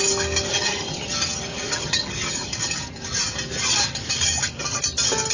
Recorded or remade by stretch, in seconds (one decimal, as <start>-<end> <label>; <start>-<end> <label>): 0.0-0.5 recorded; 0.5-1.1 remade; 1.1-1.5 recorded; 1.5-2.6 remade; 2.6-5.3 recorded